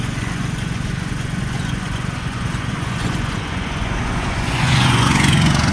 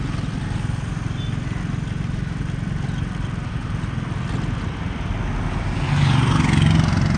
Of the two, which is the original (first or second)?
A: second